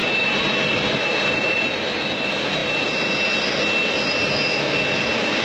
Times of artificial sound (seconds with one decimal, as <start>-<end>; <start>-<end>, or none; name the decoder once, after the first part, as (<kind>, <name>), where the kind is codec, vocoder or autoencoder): none